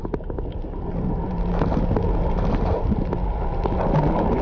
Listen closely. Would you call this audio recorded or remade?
recorded